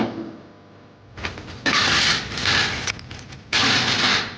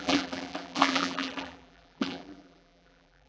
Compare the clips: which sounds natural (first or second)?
first